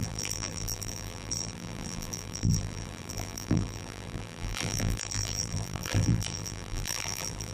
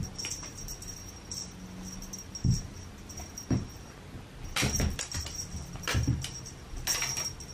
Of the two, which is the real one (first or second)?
second